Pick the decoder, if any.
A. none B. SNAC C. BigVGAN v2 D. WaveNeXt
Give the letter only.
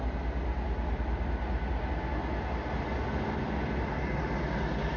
A